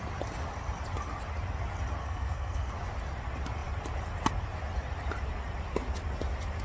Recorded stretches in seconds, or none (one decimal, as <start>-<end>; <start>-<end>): 0.0-2.0; 2.7-6.6